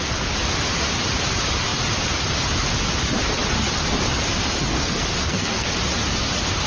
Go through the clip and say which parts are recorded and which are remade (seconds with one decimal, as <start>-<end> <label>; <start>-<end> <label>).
0.0-4.7 recorded; 4.7-5.7 remade; 5.7-6.7 recorded